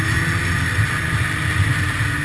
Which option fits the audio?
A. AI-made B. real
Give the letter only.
B